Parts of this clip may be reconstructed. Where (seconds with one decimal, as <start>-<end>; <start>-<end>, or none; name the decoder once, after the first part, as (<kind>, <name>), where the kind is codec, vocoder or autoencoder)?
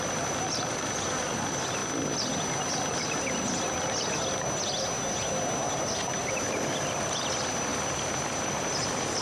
0.0-1.8 (vocoder, BigVGAN v2); 6.2-9.2